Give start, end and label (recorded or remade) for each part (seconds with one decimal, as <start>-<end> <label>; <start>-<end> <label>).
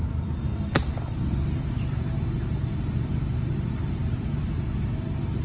0.0-5.4 recorded